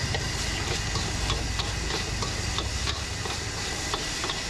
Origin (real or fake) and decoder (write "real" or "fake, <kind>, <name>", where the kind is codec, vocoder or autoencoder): real